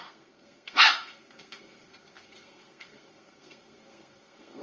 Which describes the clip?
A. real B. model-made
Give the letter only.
B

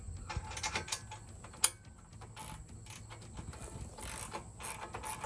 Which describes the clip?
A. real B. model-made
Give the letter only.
A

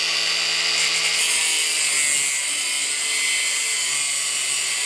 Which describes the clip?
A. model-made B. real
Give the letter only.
B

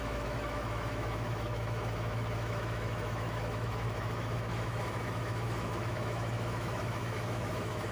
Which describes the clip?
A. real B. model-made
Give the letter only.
B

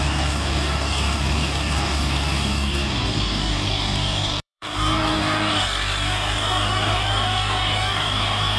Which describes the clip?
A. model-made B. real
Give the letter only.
A